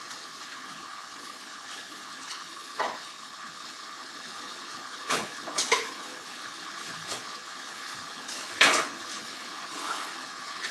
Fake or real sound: fake